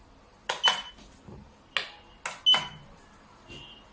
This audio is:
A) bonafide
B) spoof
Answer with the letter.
A